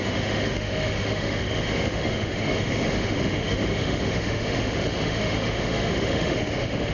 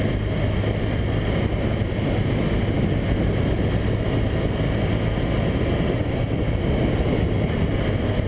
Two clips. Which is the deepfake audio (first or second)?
first